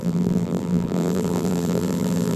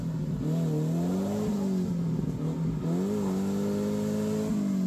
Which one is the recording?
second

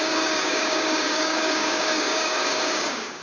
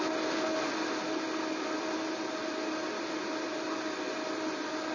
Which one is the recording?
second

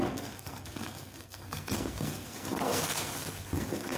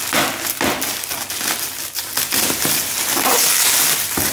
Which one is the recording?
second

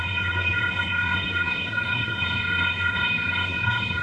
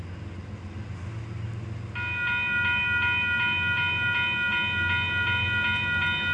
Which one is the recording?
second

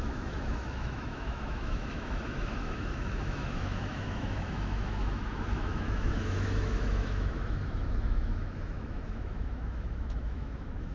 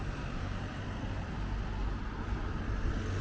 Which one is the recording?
second